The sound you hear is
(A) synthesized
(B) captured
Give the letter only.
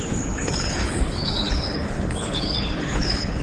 A